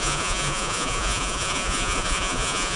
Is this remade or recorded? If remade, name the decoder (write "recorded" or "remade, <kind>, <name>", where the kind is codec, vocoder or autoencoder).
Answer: remade, vocoder, Vocos